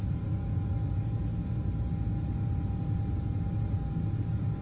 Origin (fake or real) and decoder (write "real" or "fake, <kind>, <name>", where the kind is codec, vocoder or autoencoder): real